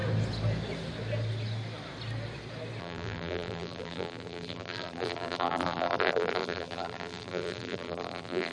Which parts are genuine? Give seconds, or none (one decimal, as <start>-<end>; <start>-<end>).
0.0-2.8